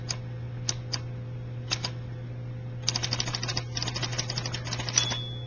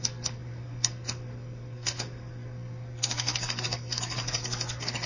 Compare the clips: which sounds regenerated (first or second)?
second